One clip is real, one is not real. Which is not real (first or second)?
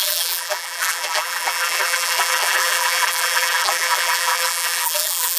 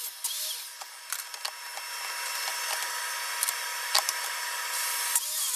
first